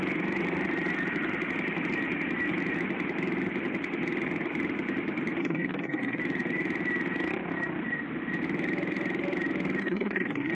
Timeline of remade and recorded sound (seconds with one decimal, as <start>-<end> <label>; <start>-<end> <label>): 0.0-5.4 recorded; 5.4-6.2 remade; 6.2-9.8 recorded; 9.8-10.5 remade